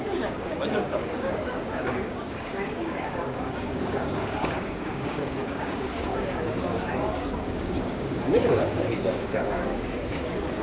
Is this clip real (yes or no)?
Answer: no